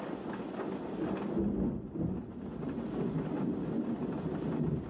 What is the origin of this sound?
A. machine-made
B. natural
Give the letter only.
B